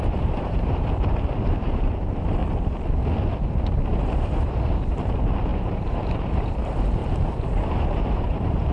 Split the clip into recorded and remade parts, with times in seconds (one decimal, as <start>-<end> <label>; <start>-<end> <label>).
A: 0.0-2.4 remade; 2.4-3.9 recorded; 3.9-8.7 remade